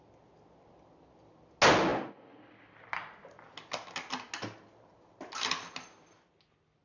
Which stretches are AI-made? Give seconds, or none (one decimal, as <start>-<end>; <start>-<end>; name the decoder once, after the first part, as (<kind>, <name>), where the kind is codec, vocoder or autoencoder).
none